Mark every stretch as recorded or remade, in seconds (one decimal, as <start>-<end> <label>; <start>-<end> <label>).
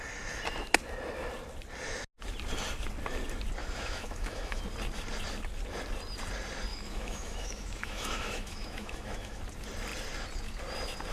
0.0-3.6 recorded; 3.6-4.6 remade; 4.6-6.7 recorded; 6.7-9.4 remade; 9.4-11.1 recorded